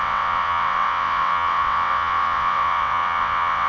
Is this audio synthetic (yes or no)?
yes